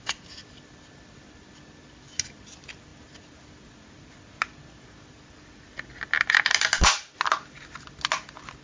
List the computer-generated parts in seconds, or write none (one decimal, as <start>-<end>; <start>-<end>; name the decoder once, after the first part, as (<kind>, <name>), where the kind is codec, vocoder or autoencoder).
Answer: none